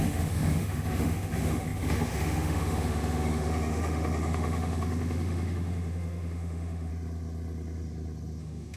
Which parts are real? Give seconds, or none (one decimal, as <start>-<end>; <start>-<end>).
6.9-8.4